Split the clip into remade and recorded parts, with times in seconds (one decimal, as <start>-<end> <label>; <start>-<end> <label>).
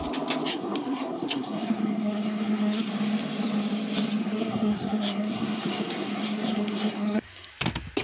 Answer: 0.0-0.5 recorded; 0.5-2.9 remade; 2.9-4.2 recorded; 4.2-7.5 remade; 7.5-8.0 recorded